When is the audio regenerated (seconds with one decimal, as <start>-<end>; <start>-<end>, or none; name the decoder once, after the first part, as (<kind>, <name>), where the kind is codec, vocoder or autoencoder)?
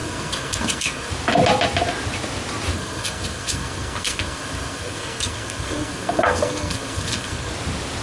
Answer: 0.0-1.1 (codec, SNAC); 2.7-7.5